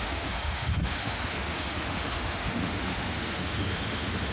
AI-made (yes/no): yes